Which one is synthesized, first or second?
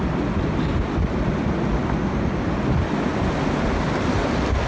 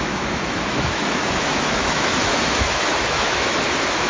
second